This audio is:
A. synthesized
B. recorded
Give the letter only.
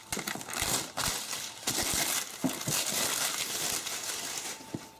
B